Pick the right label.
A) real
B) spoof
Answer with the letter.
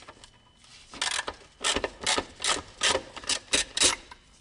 A